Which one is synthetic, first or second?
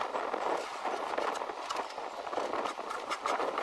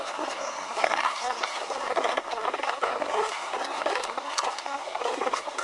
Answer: second